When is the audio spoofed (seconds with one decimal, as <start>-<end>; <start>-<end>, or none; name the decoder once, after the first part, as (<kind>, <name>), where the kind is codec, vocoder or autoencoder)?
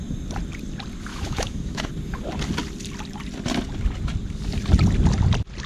1.1-1.9 (autoencoder, DAC-VAE)